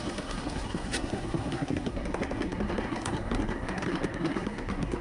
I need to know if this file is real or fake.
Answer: fake